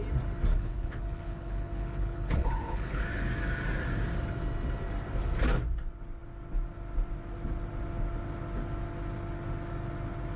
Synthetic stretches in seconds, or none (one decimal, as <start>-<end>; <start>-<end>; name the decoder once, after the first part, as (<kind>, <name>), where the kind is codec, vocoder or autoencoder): 0.5-3.0 (codec, HILCodec)